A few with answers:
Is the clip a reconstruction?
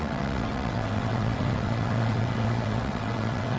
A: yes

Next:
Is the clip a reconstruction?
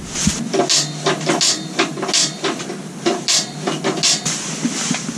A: no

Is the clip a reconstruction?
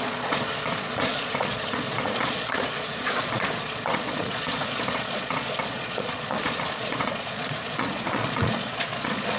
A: yes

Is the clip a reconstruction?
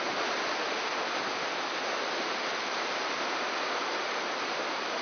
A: no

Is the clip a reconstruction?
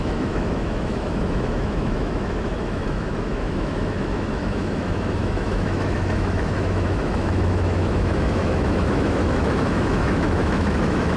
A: yes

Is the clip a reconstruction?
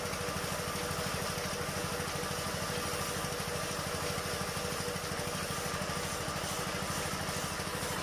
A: no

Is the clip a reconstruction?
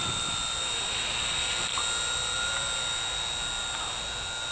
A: no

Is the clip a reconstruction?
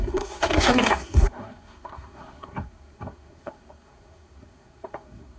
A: yes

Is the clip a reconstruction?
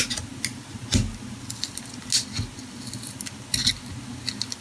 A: no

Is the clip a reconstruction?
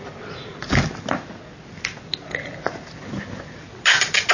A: no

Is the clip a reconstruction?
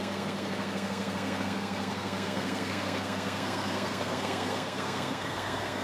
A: yes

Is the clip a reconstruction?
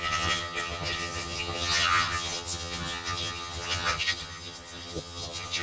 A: yes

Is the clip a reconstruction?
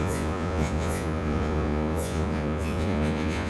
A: yes